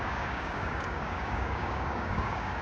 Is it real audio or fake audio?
fake